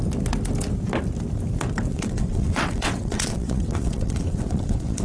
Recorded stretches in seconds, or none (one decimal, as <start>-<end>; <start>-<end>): 0.0-1.9